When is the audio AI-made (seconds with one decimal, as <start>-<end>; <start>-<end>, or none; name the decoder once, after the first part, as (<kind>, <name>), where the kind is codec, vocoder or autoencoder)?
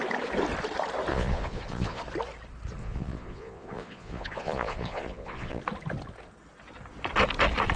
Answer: 1.1-2.0 (vocoder, Vocos); 2.8-5.6